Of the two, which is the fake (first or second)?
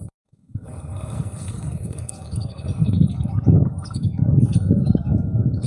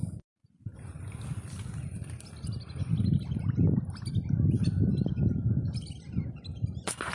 first